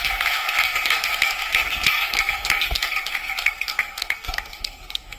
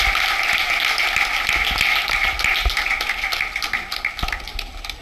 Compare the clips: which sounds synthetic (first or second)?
first